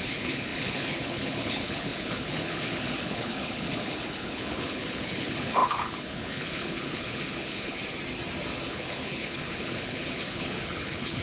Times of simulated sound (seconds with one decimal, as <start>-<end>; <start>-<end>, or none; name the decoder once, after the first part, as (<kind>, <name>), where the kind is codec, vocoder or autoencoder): 0.0-7.8 (codec, HILCodec); 8.6-11.2